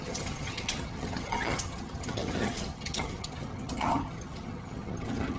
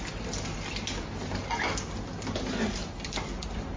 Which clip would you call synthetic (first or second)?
first